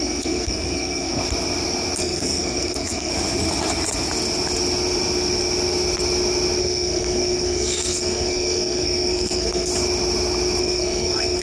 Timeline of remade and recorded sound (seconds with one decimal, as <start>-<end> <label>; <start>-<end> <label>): 0.0-1.2 remade; 1.2-2.0 recorded; 2.0-3.1 remade; 3.1-6.6 recorded; 6.6-9.7 remade; 9.7-10.6 recorded; 10.6-11.4 remade